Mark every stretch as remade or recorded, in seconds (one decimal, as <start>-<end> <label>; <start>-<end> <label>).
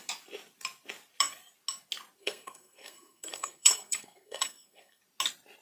0.0-2.2 recorded; 2.2-5.0 remade; 5.0-5.6 recorded